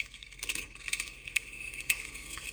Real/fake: fake